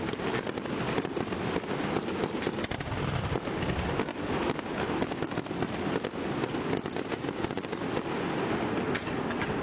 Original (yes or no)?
yes